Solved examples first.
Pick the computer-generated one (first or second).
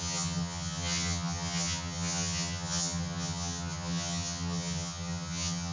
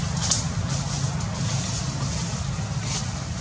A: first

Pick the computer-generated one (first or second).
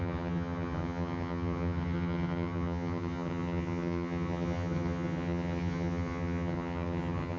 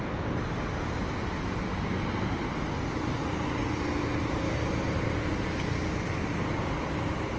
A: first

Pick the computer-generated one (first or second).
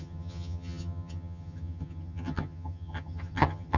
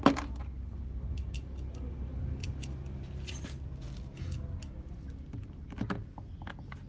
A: first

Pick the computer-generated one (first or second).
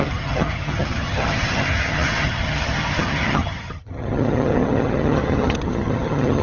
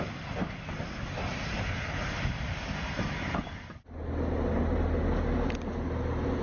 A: first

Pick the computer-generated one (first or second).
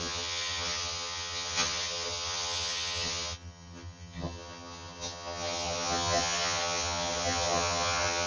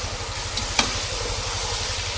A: first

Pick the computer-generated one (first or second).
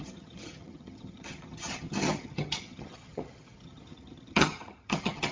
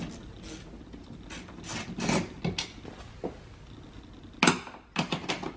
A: first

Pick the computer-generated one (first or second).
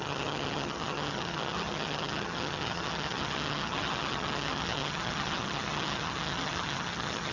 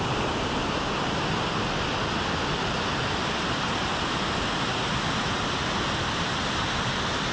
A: first